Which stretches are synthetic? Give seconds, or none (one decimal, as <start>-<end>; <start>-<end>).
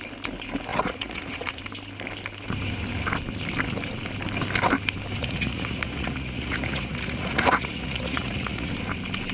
0.7-1.6; 5.2-8.7